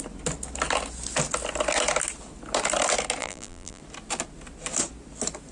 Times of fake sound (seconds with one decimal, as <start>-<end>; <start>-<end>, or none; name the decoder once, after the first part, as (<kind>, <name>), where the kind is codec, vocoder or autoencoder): 3.2-3.8 (vocoder, BigVGAN v2)

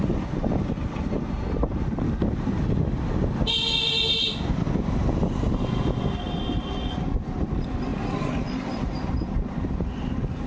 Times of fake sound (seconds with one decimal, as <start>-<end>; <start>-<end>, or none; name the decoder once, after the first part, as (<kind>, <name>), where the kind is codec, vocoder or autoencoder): none

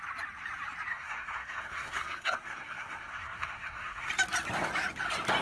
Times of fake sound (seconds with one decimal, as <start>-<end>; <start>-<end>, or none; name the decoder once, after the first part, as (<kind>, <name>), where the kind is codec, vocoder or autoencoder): 0.9-4.1 (codec, SNAC)

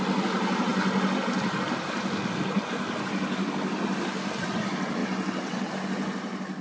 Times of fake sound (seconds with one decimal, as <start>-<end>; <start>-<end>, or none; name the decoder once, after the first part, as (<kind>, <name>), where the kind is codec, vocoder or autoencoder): 5.0-5.7 (vocoder, WaveNeXt)